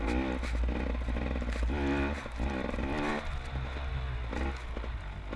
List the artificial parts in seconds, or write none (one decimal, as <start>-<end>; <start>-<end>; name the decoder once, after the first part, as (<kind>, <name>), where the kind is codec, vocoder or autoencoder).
none